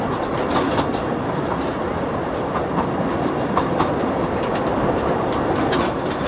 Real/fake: real